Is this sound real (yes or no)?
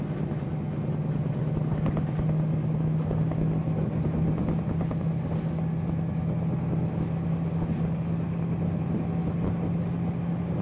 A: yes